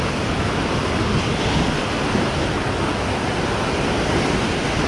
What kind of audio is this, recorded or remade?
recorded